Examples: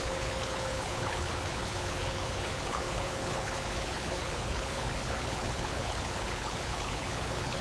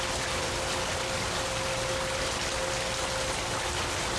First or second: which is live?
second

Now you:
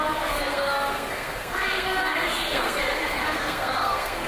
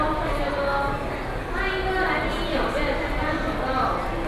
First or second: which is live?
second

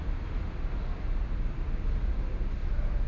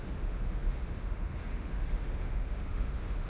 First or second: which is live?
first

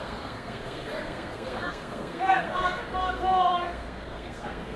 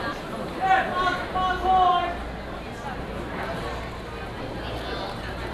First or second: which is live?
second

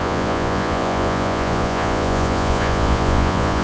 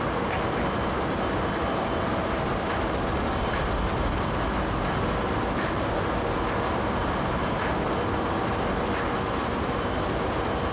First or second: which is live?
second